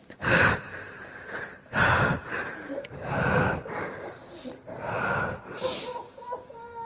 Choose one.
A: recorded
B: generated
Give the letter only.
B